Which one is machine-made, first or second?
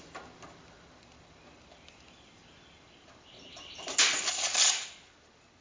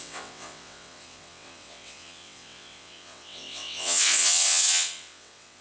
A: second